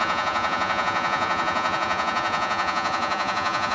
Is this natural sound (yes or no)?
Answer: no